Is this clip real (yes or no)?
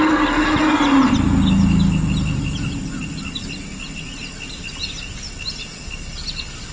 yes